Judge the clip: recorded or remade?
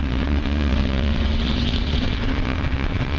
remade